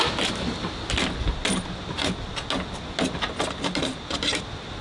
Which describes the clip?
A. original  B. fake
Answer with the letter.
A